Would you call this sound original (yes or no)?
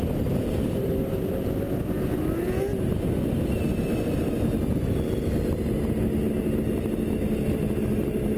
yes